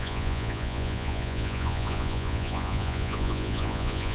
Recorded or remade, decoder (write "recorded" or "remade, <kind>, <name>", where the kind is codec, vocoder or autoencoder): remade, vocoder, Vocos